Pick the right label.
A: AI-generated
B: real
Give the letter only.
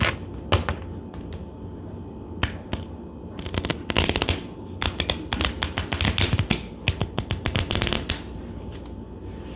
B